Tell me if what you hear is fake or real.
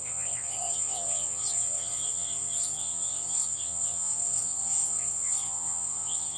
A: fake